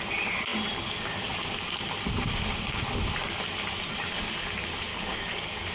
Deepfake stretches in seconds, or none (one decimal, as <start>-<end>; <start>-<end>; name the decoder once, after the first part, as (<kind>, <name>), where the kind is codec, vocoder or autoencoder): 4.9-5.7 (codec, DAC)